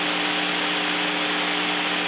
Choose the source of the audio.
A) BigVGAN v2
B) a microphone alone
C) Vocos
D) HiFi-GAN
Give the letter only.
B